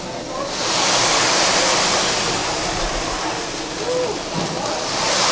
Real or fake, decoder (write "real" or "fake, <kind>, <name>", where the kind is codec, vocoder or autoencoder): real